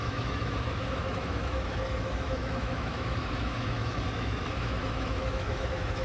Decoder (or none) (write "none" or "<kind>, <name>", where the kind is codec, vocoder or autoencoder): autoencoder, DAC-VAE